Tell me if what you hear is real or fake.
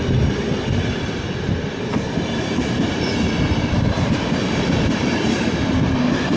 fake